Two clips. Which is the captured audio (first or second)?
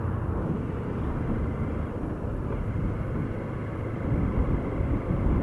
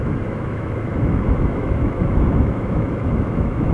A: first